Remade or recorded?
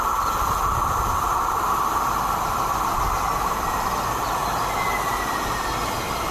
remade